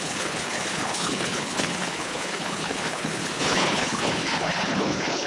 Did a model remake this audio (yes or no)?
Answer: yes